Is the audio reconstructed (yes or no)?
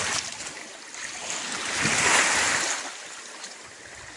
no